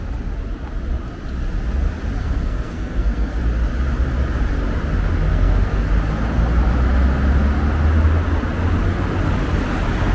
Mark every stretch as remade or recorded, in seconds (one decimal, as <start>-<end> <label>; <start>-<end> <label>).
0.0-2.2 recorded; 2.2-3.4 remade; 3.4-5.3 recorded; 5.3-5.9 remade; 5.9-10.1 recorded

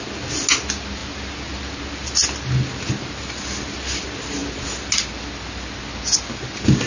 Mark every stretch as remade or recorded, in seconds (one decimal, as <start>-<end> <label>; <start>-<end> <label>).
0.0-6.9 recorded

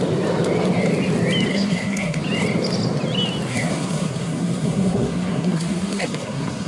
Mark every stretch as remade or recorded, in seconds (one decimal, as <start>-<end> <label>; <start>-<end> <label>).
0.0-1.5 recorded; 1.5-2.2 remade; 2.2-3.5 recorded; 3.5-6.7 remade

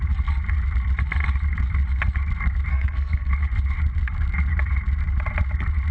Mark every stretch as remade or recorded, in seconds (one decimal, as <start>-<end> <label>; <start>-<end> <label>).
0.0-2.7 recorded; 2.7-3.3 remade; 3.3-5.9 recorded

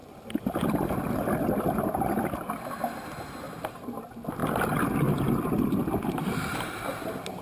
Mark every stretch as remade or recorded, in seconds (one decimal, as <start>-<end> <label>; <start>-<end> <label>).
0.0-7.4 recorded

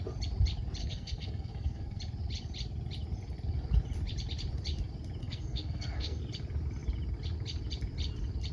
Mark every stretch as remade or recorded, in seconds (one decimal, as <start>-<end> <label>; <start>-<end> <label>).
0.0-0.8 recorded; 0.8-2.0 remade; 2.0-5.2 recorded; 5.2-6.2 remade; 6.2-8.5 recorded